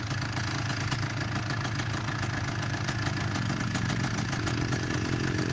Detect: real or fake real